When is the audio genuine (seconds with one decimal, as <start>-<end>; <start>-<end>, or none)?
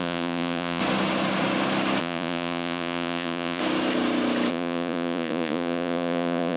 0.8-2.0; 3.6-4.5